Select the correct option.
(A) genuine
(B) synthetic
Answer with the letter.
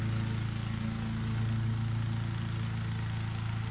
A